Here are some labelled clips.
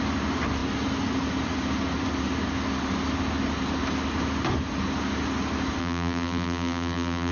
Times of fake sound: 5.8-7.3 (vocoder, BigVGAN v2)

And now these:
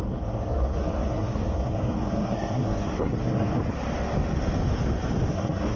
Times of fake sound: 0.0-3.6 (codec, SNAC); 5.3-5.8

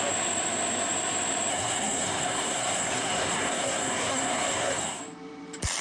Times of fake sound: 1.5-5.0 (codec, SNAC)

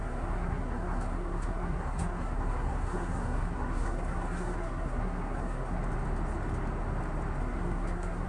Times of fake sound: 0.0-5.8 (codec, SNAC); 7.4-8.3

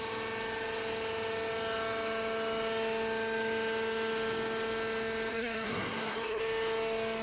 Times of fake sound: 5.3-6.4 (codec, SNAC)

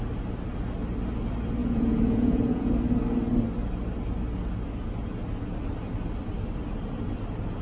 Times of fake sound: 1.6-2.7 (vocoder, Vocos)

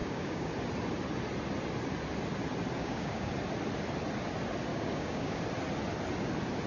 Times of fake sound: 0.0-0.5 (codec, DAC); 2.8-3.3; 4.7-5.4